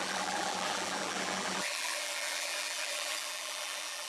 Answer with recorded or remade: remade